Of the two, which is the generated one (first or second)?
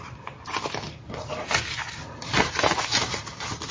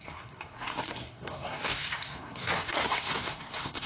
second